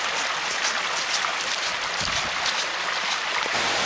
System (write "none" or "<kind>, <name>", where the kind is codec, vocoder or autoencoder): none